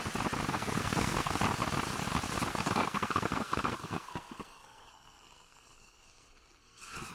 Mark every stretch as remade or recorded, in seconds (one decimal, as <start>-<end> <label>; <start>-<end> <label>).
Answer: 0.0-0.5 recorded; 0.5-1.4 remade; 1.4-2.5 recorded; 2.5-7.1 remade